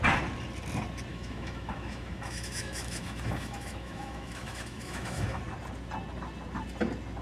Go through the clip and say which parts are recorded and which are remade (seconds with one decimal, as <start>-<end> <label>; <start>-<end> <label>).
0.0-1.1 recorded; 1.1-5.4 remade; 5.4-7.2 recorded